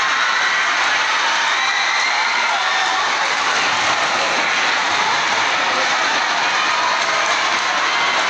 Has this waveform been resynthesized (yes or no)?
no